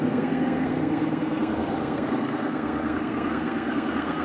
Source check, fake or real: fake